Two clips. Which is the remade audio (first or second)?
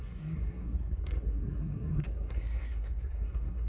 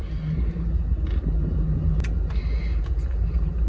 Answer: first